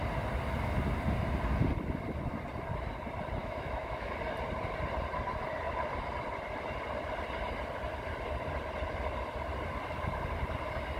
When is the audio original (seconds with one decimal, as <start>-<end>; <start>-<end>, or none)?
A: 0.0-3.4; 4.1-11.0